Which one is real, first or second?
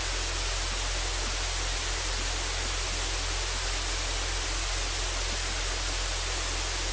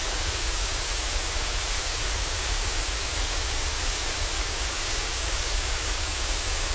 first